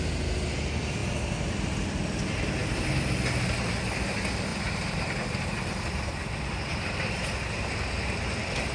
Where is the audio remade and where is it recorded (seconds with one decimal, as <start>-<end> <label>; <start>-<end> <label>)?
0.0-8.7 recorded